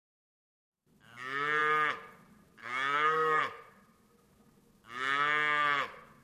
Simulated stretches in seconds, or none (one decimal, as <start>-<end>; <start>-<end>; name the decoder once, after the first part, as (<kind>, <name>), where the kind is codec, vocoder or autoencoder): 2.6-3.4 (codec, SNAC)